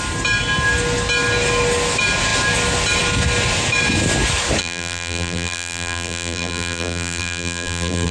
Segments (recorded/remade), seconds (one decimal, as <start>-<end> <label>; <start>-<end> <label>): 0.0-4.6 recorded; 4.6-8.1 remade